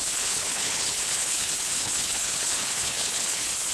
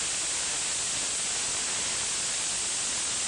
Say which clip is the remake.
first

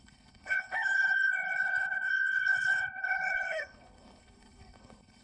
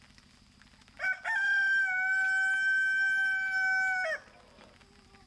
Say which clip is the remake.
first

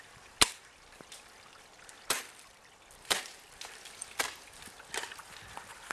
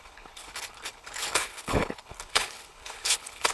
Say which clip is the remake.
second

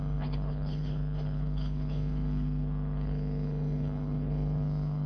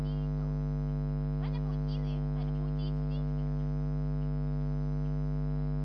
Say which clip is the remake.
first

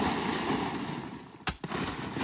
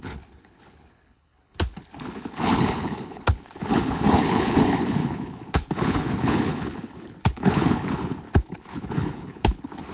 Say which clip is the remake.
second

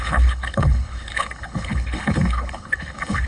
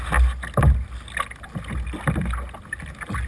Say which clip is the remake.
first